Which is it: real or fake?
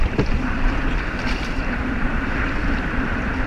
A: fake